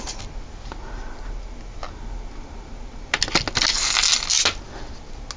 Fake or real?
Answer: real